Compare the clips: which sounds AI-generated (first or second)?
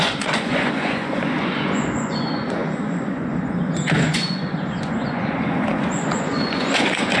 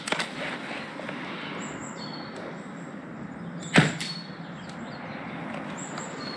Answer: first